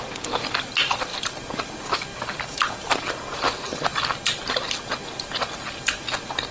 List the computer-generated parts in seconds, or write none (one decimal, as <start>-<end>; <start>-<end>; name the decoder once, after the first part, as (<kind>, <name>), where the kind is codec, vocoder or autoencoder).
2.1-3.0 (vocoder, BigVGAN v2)